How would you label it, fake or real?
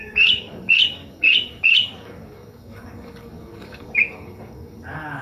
fake